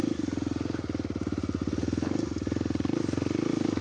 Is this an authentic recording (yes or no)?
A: yes